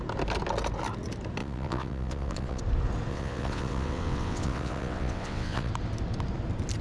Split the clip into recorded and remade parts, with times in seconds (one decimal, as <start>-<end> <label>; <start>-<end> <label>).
0.0-1.4 recorded; 1.4-2.6 remade; 2.6-3.1 recorded; 3.1-5.7 remade; 5.7-6.8 recorded